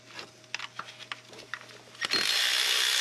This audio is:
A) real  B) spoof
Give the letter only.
A